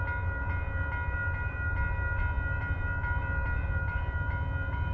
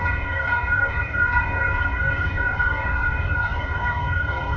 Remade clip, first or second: second